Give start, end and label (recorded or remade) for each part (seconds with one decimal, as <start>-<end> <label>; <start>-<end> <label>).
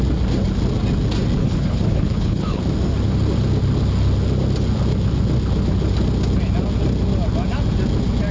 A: 0.0-1.4 recorded; 1.4-2.6 remade; 2.6-8.3 recorded